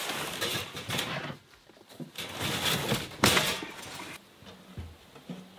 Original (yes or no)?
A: yes